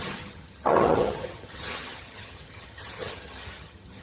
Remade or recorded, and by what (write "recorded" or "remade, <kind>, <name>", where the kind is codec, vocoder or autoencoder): remade, vocoder, HiFi-GAN